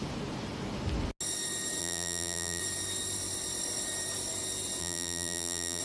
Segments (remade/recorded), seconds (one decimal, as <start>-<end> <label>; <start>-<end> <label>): 0.0-1.8 recorded; 1.8-2.6 remade; 2.6-4.8 recorded; 4.8-5.8 remade

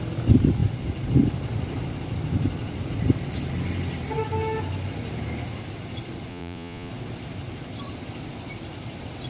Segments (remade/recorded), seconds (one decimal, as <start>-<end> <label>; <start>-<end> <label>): 0.0-6.3 recorded; 6.3-6.9 remade; 6.9-9.3 recorded

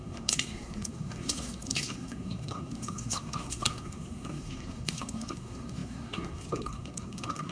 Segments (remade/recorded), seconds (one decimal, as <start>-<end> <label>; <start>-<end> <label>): 0.0-7.5 remade

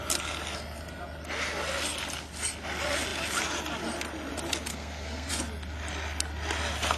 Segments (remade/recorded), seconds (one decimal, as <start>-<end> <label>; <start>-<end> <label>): 0.0-4.7 recorded; 4.7-5.3 remade; 5.3-7.0 recorded

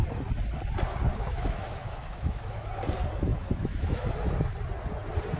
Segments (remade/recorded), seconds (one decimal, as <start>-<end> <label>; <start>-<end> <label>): 0.0-1.1 recorded; 1.1-2.7 remade; 2.7-3.3 recorded; 3.3-4.1 remade; 4.1-5.4 recorded

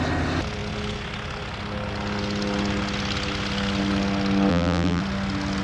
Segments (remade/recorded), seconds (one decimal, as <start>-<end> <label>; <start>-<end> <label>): 0.0-4.5 recorded; 4.5-5.0 remade; 5.0-5.6 recorded

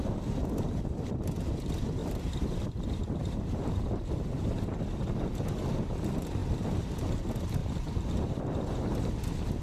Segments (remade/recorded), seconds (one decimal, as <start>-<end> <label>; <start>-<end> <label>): 0.0-2.0 recorded; 2.0-4.6 remade; 4.6-7.6 recorded; 7.6-8.4 remade; 8.4-9.6 recorded

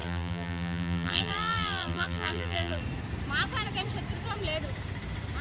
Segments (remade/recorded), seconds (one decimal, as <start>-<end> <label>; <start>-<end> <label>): 0.0-2.8 remade; 2.8-5.4 recorded